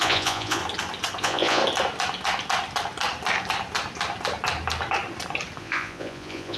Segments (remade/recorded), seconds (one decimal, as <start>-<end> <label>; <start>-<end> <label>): 0.0-0.6 remade; 0.6-1.2 recorded; 1.2-1.6 remade; 1.6-5.6 recorded; 5.6-6.6 remade